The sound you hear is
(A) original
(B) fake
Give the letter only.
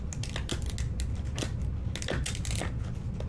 A